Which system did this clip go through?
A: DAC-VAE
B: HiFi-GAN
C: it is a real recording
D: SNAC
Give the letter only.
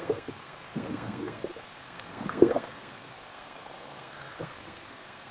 D